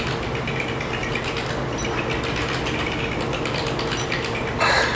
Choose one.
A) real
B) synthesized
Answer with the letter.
A